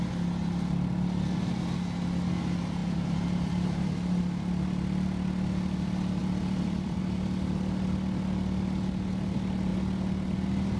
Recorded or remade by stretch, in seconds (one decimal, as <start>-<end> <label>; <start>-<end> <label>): 0.0-2.8 recorded; 2.8-3.9 remade; 3.9-6.2 recorded; 6.2-7.0 remade; 7.0-10.8 recorded